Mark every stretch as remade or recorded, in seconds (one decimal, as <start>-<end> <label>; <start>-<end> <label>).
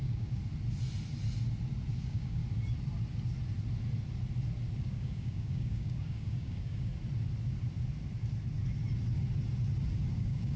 0.0-0.4 remade; 0.4-2.0 recorded; 2.0-2.4 remade; 2.4-4.8 recorded; 4.8-6.9 remade; 6.9-10.1 recorded; 10.1-10.6 remade